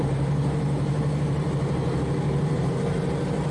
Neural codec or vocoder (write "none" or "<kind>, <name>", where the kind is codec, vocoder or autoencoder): vocoder, BigVGAN v2